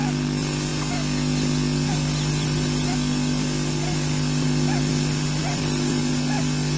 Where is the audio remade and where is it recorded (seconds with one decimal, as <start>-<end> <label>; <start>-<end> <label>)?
0.0-5.5 recorded; 5.5-6.0 remade; 6.0-6.8 recorded